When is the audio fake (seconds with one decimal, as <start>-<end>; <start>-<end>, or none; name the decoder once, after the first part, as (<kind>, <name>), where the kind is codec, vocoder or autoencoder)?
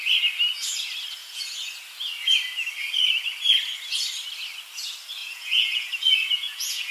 1.2-1.7 (vocoder, Vocos); 5.2-6.9